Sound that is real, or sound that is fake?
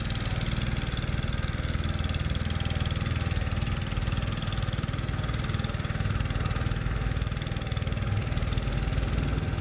real